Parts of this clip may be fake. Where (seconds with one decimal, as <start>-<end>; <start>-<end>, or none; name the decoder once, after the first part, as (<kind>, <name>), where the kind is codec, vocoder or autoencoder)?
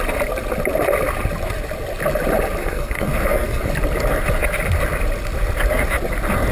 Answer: 2.6-3.7 (codec, SNAC)